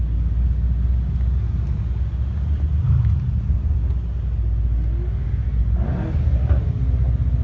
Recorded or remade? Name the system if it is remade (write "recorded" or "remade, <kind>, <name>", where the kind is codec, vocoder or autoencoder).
recorded